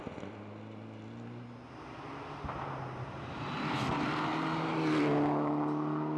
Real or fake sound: real